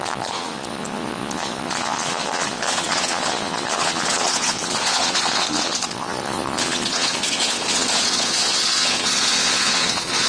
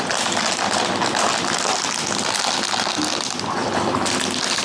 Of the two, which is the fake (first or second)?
first